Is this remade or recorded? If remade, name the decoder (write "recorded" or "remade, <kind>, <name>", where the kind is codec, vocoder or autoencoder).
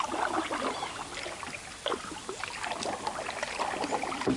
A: recorded